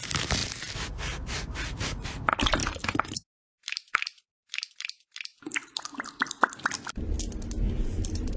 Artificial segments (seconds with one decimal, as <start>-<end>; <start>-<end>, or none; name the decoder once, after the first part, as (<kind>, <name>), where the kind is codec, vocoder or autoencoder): 0.4-2.1 (vocoder, BigVGAN v2); 2.6-4.7